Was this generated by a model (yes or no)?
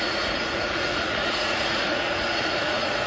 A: yes